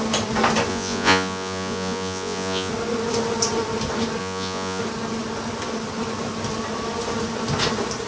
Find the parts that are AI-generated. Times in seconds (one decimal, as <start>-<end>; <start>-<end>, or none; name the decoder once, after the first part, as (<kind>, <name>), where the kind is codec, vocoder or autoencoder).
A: 0.7-2.7 (vocoder, Vocos); 4.2-4.8